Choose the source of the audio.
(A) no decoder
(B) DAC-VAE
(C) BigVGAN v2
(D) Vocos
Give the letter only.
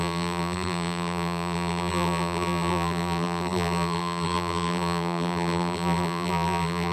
C